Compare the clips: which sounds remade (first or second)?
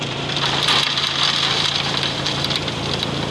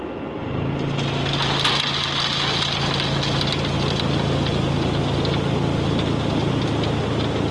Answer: first